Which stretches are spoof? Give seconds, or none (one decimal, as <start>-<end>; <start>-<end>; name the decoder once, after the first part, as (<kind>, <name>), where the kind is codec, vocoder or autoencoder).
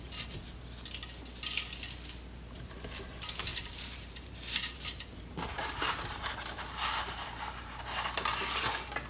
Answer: 3.5-7.8 (vocoder, BigVGAN v2)